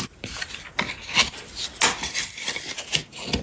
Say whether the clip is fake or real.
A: real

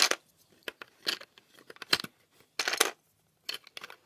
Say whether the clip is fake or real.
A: real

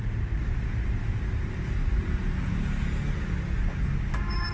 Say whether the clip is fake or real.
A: real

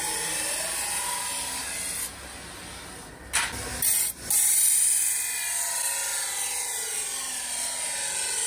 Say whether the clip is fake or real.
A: real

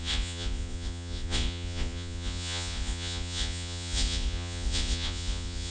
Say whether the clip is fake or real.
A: fake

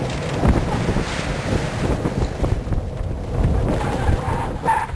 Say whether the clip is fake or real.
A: real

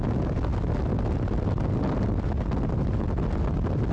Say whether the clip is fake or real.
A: real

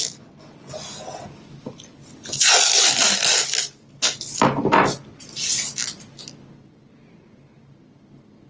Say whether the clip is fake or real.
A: real